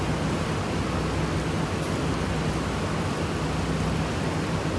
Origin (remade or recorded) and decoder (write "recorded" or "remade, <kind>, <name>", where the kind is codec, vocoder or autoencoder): recorded